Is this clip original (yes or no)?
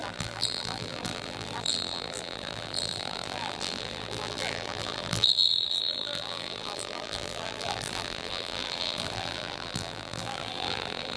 no